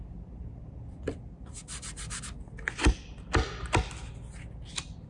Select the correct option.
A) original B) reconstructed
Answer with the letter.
A